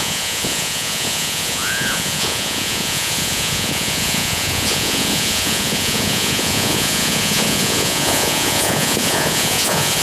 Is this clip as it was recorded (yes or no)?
no